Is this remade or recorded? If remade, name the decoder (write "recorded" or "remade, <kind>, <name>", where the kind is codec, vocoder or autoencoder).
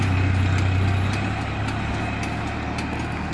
recorded